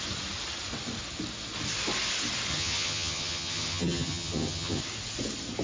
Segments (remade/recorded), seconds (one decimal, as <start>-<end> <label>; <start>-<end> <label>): 0.0-2.5 recorded; 2.5-4.8 remade; 4.8-5.6 recorded